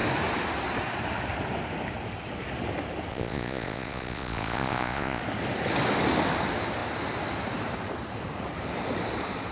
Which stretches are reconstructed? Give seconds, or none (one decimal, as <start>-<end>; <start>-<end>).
3.1-5.2